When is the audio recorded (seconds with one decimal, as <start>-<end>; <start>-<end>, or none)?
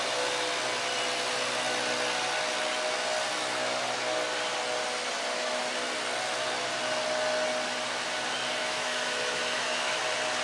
0.0-8.6; 10.0-10.4